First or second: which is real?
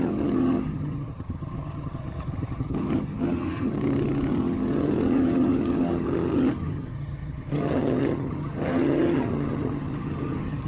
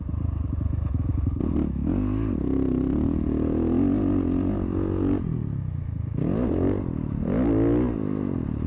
second